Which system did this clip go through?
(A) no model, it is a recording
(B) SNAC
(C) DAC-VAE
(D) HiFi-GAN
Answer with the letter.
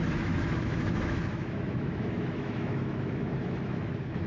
C